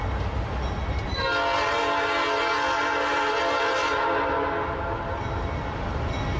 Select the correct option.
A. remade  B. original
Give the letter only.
B